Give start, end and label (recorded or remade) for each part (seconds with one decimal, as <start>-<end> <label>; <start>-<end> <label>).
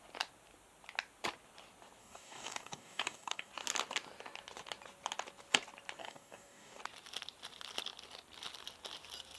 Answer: 0.0-2.0 recorded; 2.0-3.5 remade; 3.5-6.0 recorded; 6.0-6.8 remade; 6.8-9.4 recorded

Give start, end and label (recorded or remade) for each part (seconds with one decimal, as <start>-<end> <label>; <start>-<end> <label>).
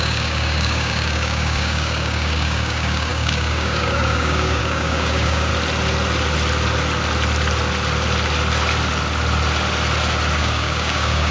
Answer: 0.0-5.5 remade; 5.5-10.4 recorded; 10.4-11.3 remade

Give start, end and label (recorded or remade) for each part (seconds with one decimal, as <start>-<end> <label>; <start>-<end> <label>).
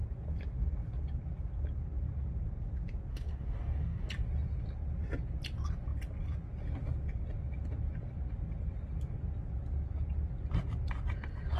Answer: 0.0-3.1 recorded; 3.1-4.1 remade; 4.1-11.6 recorded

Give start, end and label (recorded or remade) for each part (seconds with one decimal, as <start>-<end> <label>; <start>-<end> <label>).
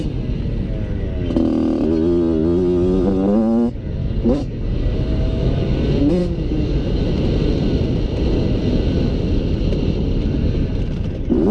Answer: 0.0-4.0 recorded; 4.0-5.6 remade; 5.6-6.2 recorded; 6.2-7.0 remade; 7.0-11.5 recorded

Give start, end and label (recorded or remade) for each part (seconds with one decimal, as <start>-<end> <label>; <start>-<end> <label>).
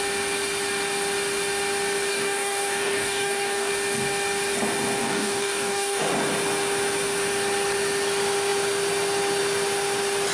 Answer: 0.0-2.1 recorded; 2.1-3.7 remade; 3.7-5.0 recorded; 5.0-6.0 remade; 6.0-10.3 recorded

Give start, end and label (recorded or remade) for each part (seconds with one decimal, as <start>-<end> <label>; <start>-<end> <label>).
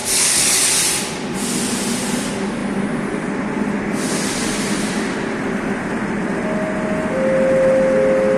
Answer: 0.0-0.7 remade; 0.7-8.4 recorded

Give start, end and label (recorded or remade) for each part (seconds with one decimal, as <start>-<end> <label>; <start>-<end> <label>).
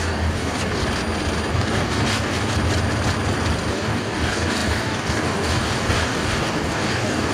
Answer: 0.0-0.8 remade; 0.8-1.5 recorded; 1.5-2.5 remade; 2.5-3.7 recorded; 3.7-7.3 remade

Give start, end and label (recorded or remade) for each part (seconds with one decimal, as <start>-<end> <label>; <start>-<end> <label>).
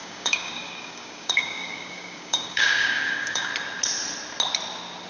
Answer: 0.0-3.5 remade; 3.5-5.1 recorded